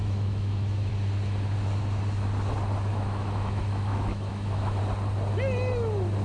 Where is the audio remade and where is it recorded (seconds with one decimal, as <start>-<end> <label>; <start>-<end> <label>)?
0.0-0.9 remade; 0.9-2.9 recorded; 2.9-4.8 remade; 4.8-6.2 recorded